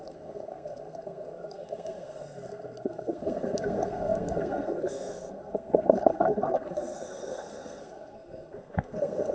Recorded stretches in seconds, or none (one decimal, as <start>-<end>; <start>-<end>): none